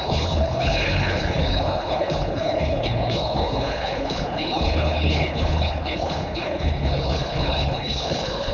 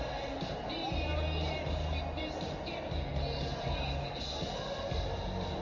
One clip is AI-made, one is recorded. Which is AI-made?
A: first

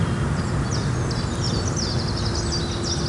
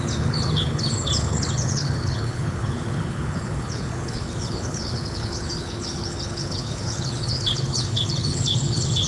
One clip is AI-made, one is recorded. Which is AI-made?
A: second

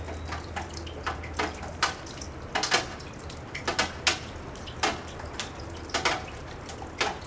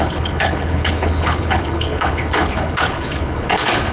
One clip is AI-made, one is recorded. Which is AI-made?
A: second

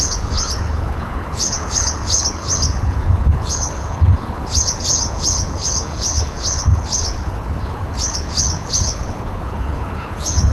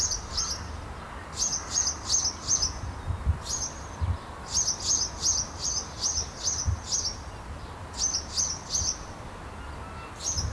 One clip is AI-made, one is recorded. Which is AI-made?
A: first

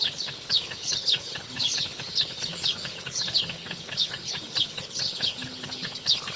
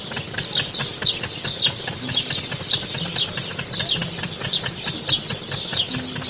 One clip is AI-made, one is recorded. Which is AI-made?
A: first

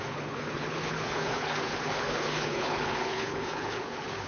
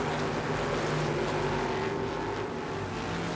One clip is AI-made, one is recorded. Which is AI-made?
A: first